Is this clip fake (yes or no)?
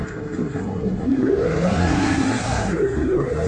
yes